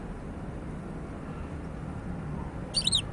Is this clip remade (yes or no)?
no